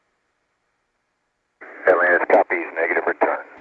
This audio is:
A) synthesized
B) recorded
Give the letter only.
B